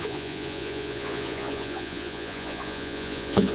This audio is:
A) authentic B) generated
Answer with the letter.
B